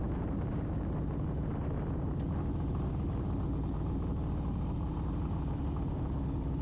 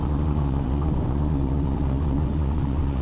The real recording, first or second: first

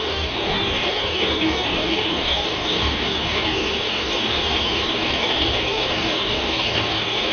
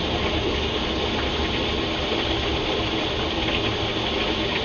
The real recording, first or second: second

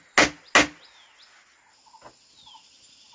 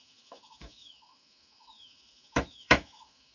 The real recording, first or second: first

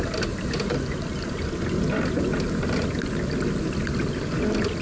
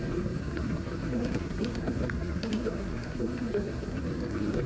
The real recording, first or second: first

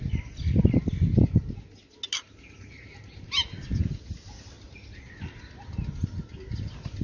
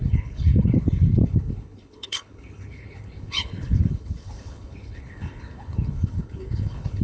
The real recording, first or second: first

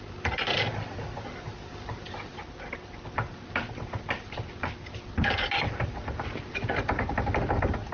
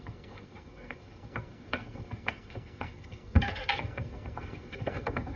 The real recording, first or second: first